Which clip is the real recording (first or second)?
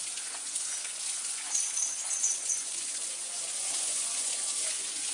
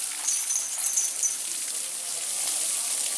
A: second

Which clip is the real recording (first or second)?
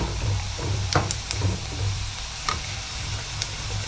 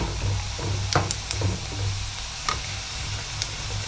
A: second